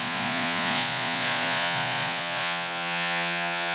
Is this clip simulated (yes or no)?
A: yes